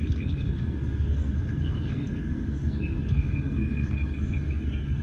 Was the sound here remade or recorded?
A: remade